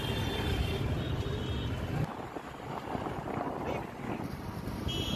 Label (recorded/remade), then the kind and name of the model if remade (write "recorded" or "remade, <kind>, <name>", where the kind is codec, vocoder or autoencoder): recorded